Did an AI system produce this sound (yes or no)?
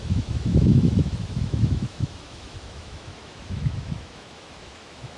yes